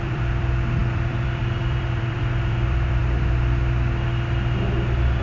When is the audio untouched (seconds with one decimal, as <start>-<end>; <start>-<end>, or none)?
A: 3.0-5.2